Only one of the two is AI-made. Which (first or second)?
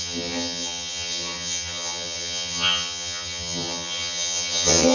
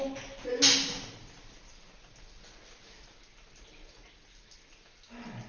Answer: first